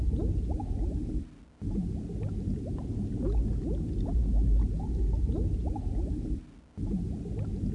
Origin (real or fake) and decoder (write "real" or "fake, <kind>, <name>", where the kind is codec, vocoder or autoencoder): real